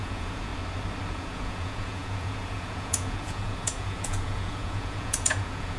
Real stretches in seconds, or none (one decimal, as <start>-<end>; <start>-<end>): 0.5-1.1